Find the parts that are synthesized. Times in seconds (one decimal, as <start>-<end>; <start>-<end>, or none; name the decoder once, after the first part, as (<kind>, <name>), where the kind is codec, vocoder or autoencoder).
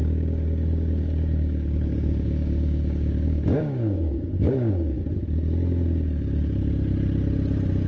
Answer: 0.0-4.7 (codec, DAC)